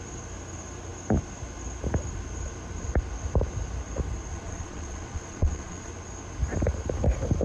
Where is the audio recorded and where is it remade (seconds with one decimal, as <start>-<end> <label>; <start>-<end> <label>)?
0.0-4.3 recorded; 4.3-5.9 remade; 5.9-7.4 recorded